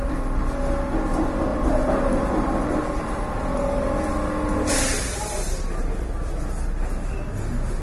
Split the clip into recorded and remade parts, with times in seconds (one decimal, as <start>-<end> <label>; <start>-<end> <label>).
0.0-1.5 recorded; 1.5-4.1 remade; 4.1-7.8 recorded